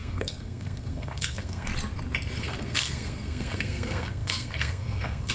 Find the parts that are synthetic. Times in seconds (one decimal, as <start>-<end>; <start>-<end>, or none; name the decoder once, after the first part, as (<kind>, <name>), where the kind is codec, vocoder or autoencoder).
0.0-1.7 (codec, SNAC); 2.4-5.3